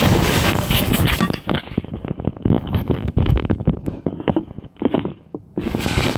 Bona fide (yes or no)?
no